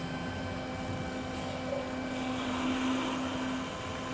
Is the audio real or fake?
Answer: real